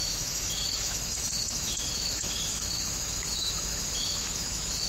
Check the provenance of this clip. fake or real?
fake